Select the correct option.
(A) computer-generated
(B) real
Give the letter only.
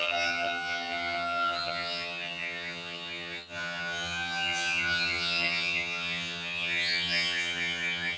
A